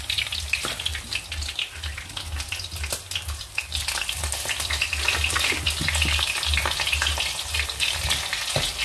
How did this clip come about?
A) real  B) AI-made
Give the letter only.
A